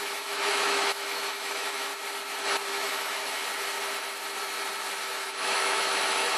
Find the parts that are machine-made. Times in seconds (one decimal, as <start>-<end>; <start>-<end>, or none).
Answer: 0.0-1.9; 2.7-3.4; 5.0-6.4